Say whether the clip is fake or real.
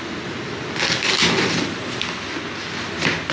real